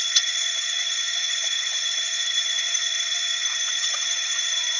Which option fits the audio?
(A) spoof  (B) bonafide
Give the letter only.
A